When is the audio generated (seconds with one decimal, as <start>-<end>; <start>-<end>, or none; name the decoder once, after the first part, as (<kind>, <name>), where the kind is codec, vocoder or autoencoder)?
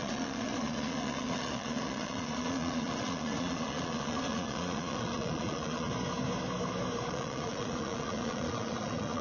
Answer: 0.0-5.9 (vocoder, Vocos); 7.1-9.2